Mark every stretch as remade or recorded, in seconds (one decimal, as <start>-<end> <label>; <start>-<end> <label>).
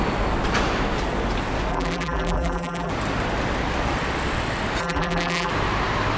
0.0-1.7 recorded; 1.7-2.9 remade; 2.9-4.8 recorded; 4.8-5.5 remade; 5.5-6.2 recorded